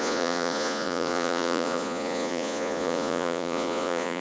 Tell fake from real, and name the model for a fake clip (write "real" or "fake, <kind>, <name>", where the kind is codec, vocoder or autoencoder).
fake, vocoder, Vocos